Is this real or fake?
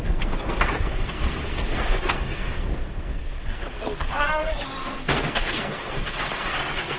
fake